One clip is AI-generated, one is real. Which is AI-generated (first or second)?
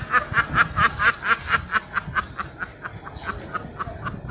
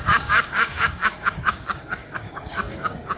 second